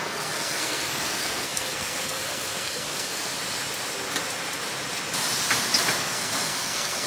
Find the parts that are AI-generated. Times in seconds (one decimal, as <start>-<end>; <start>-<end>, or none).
0.0-3.3; 6.0-7.1